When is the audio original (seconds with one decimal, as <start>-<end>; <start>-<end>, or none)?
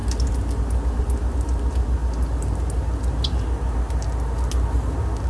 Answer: 0.0-5.3